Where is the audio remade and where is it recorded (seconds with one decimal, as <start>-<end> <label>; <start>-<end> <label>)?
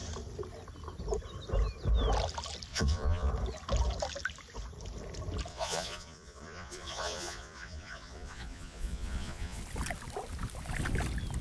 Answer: 0.0-2.7 recorded; 2.7-3.3 remade; 3.3-5.5 recorded; 5.5-9.6 remade; 9.6-11.4 recorded